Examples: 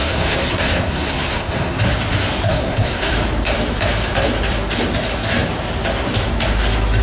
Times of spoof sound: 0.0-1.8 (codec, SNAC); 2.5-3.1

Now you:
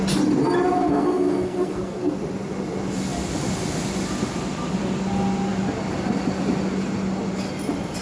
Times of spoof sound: 0.8-2.1 (codec, SNAC)

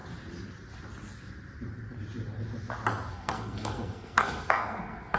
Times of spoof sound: 3.1-5.2 (codec, SNAC)

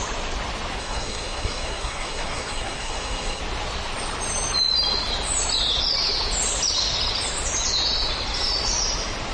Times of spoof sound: 0.8-3.4 (codec, SNAC)

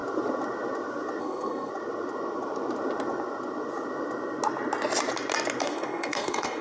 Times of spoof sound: 1.2-1.7 (codec, SNAC); 5.6-6.6

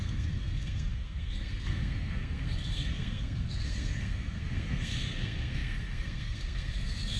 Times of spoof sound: 0.0-7.2 (codec, SNAC)

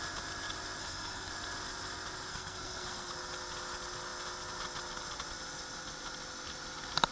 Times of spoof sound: 0.8-1.3 (codec, SNAC); 2.3-3.1

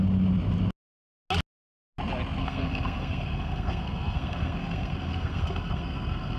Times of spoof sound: 2.4-6.4 (codec, SNAC)